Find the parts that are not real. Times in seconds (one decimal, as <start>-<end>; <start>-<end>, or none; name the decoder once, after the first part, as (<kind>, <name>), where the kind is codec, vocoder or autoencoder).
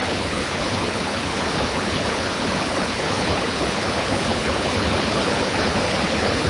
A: 0.0-6.5 (codec, HILCodec)